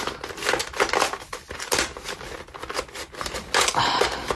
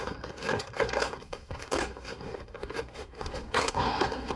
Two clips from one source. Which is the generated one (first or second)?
second